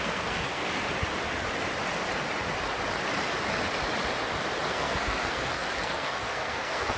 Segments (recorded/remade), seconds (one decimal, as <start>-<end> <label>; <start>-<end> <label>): 0.0-0.6 remade; 0.6-4.7 recorded; 4.7-7.0 remade